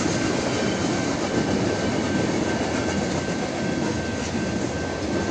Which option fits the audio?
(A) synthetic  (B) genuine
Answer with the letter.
B